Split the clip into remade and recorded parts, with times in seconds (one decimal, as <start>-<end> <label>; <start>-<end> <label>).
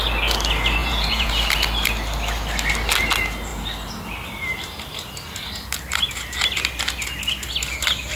0.0-0.8 recorded; 0.8-1.3 remade; 1.3-8.2 recorded